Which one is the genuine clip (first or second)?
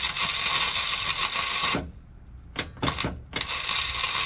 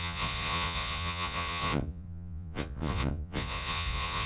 first